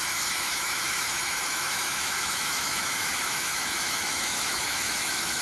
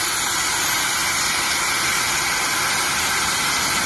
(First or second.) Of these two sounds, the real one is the second